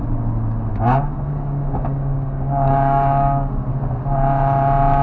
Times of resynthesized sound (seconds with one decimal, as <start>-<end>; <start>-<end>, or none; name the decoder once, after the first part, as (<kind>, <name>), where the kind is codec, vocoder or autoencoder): 0.7-3.7 (codec, DAC)